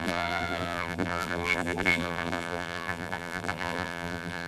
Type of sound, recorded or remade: remade